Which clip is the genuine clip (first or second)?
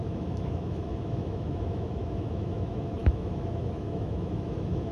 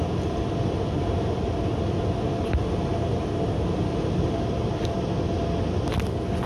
second